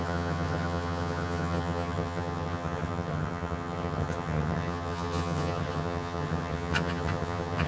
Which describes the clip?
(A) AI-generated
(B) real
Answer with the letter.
A